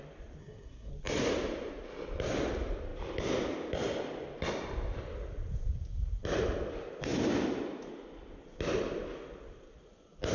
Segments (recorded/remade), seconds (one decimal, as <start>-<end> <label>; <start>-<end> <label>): 0.0-0.4 recorded; 0.4-0.9 remade; 0.9-10.3 recorded